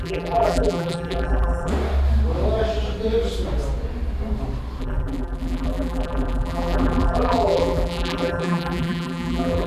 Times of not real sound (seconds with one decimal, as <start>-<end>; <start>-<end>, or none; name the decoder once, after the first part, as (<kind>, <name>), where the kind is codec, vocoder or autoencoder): 0.0-1.7 (vocoder, BigVGAN v2); 4.8-9.7